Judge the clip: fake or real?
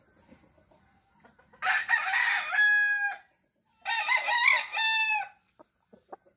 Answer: real